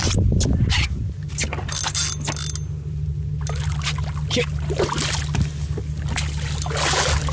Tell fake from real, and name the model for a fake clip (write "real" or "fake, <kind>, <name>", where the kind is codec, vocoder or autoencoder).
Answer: real